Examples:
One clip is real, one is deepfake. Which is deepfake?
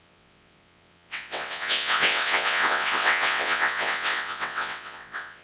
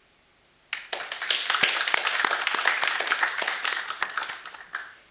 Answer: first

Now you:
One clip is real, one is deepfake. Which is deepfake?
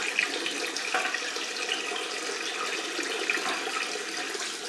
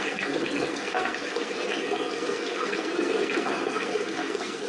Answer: second